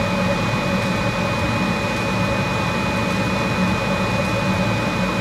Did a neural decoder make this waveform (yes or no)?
no